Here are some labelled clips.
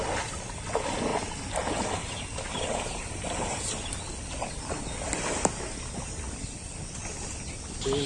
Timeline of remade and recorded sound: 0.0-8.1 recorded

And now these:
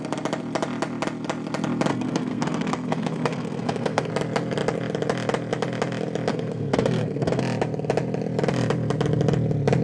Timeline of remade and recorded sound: 0.0-1.9 recorded; 1.9-4.1 remade; 4.1-6.3 recorded; 6.3-7.4 remade; 7.4-9.8 recorded

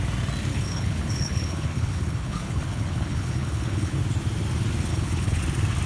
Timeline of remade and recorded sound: 0.0-0.5 recorded; 0.5-4.0 remade; 4.0-4.9 recorded; 4.9-5.4 remade; 5.4-5.9 recorded

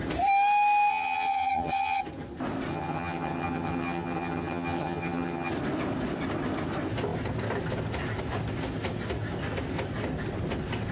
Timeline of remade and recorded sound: 0.0-0.9 recorded; 0.9-2.0 remade; 2.0-2.7 recorded; 2.7-5.5 remade; 5.5-10.9 recorded

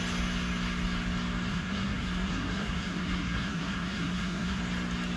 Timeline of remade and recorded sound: 0.0-1.5 recorded; 1.5-4.6 remade; 4.6-5.2 recorded